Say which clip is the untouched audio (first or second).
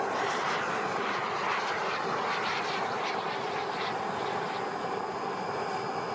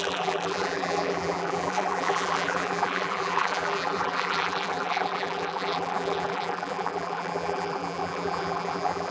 first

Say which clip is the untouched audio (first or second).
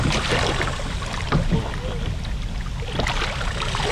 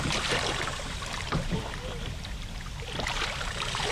first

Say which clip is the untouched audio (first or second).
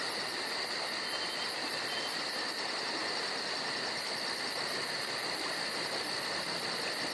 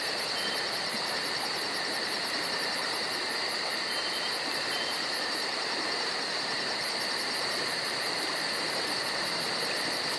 first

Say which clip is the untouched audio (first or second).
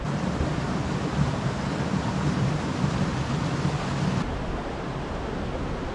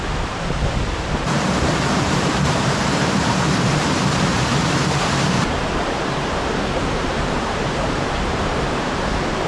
first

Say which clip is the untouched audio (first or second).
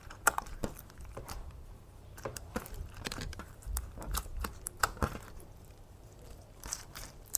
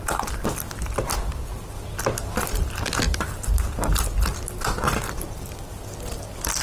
second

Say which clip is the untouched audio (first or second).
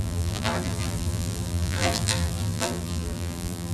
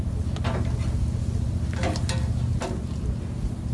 second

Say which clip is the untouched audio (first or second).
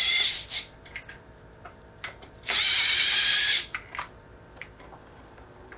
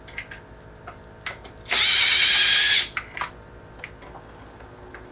second